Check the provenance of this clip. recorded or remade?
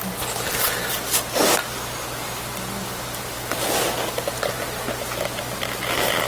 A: recorded